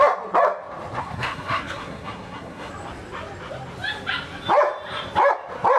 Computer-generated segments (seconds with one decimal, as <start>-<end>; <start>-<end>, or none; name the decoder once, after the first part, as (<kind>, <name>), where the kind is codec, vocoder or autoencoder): 1.0-2.7 (codec, SNAC)